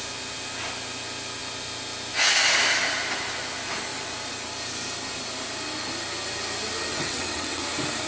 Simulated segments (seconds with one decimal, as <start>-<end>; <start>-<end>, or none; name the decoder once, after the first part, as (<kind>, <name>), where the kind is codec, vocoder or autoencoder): 6.9-7.6 (vocoder, WaveNeXt)